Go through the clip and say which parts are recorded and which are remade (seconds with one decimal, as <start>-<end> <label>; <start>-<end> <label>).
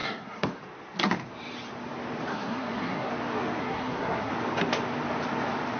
0.0-0.6 remade; 0.6-2.3 recorded; 2.3-3.1 remade; 3.1-3.6 recorded; 3.6-4.3 remade; 4.3-5.8 recorded